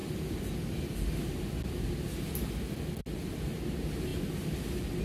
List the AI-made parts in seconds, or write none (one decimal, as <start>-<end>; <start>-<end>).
none